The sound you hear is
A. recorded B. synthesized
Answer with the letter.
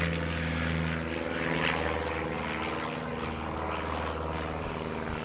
A